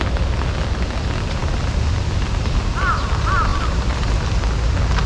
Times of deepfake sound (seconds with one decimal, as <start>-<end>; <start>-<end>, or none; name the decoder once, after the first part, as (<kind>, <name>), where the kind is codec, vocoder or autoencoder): 3.5-4.5 (vocoder, BigVGAN v2)